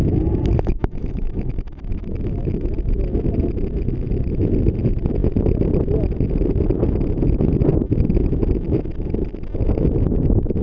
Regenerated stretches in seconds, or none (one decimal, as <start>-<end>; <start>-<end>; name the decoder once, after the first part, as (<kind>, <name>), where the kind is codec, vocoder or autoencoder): 0.7-2.7 (autoencoder, DAC-VAE)